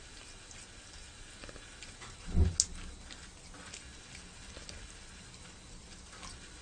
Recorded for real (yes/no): yes